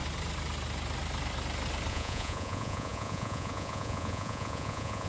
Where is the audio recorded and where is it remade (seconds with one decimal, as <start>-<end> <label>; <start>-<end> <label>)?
0.0-1.9 recorded; 1.9-5.1 remade